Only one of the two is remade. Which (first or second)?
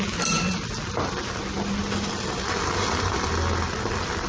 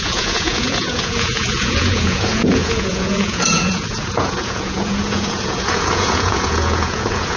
second